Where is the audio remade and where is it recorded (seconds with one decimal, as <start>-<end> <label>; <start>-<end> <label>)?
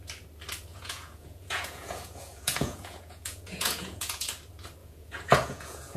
0.0-0.7 recorded; 0.7-4.3 remade; 4.3-4.8 recorded; 4.8-6.0 remade